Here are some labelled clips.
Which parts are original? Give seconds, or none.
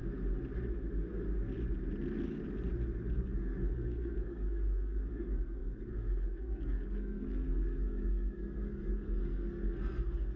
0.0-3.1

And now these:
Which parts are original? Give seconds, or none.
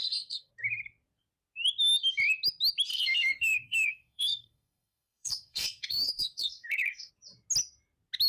0.5-2.9; 7.1-8.3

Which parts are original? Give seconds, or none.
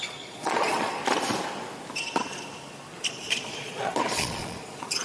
1.0-3.1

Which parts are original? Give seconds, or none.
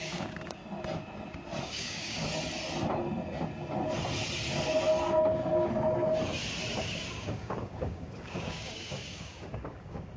0.6-1.6; 2.3-6.8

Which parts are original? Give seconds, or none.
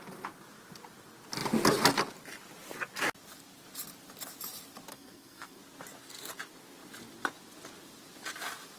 0.0-4.9; 5.6-8.8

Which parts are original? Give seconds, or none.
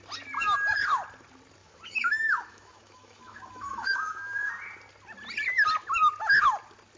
0.0-1.6; 4.5-7.0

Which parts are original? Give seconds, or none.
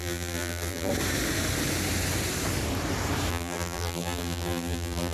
0.9-3.3